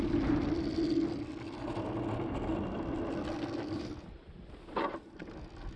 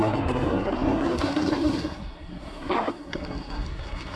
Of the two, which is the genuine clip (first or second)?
first